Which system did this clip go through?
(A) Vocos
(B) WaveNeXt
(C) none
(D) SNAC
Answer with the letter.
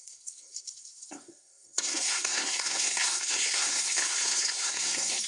D